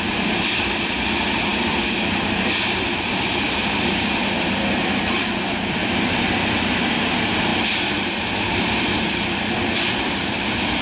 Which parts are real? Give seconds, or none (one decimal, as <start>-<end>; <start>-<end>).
none